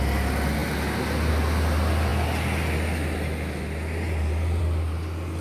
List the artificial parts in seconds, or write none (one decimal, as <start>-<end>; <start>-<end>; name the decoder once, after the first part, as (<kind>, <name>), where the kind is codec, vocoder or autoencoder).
none